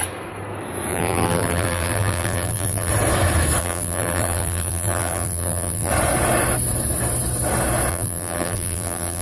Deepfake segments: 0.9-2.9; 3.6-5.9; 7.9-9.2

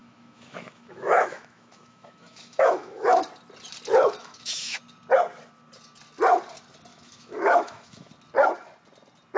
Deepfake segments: 0.0-3.2; 4.2-4.8; 6.9-8.1

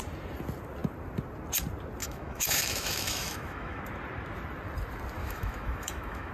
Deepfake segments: 2.0-3.8; 5.2-6.3

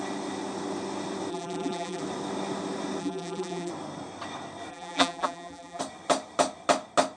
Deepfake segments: 1.3-2.0; 3.0-3.7; 4.7-5.8

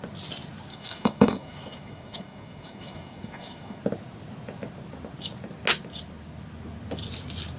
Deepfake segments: 0.7-3.8